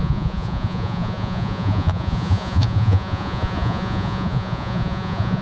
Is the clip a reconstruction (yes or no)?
yes